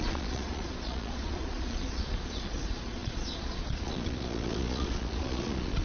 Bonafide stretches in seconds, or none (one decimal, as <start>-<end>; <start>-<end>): none